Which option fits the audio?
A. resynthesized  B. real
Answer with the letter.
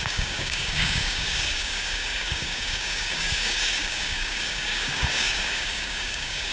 A